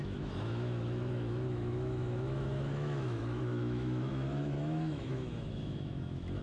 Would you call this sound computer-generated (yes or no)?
yes